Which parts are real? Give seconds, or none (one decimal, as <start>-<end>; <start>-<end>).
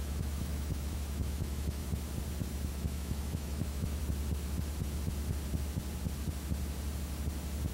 1.8-2.7; 4.0-7.7